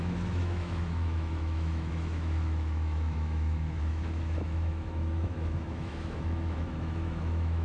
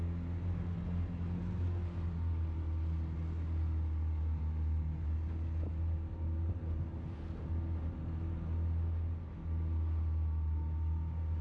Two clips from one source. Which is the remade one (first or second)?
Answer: first